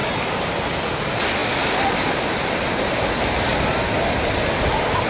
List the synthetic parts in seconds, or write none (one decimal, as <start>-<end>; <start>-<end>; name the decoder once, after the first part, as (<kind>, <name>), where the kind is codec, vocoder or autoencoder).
none

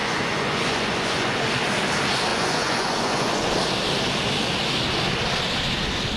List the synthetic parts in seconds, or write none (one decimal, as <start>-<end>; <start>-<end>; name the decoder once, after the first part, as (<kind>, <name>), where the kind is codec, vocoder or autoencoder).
0.0-1.5 (vocoder, Vocos); 2.3-3.5